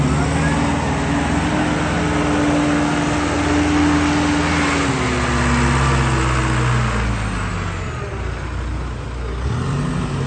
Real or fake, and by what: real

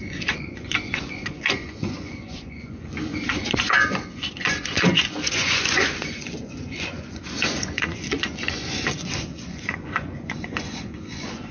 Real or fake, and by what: fake, vocoder, Vocos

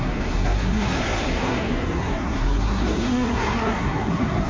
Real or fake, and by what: fake, codec, SNAC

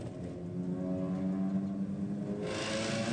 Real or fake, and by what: real